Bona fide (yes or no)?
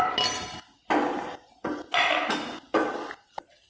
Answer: yes